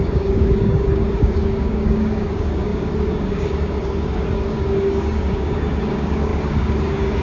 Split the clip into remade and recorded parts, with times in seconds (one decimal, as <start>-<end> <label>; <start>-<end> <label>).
0.0-7.2 remade